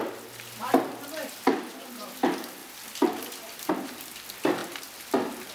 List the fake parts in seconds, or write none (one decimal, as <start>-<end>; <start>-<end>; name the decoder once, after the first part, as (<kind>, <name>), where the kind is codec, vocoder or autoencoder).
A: 2.6-3.7 (vocoder, BigVGAN v2); 4.6-5.5